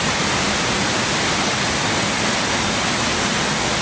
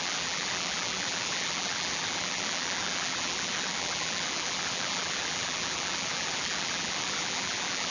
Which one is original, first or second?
first